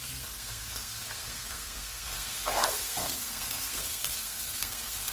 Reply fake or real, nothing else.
fake